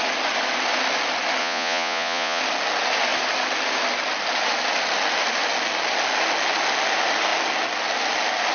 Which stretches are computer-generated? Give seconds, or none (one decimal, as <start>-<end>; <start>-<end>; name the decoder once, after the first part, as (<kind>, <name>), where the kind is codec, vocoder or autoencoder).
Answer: 1.4-2.4 (vocoder, Vocos)